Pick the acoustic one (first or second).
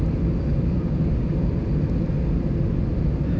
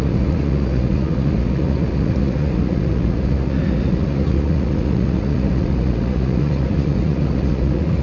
first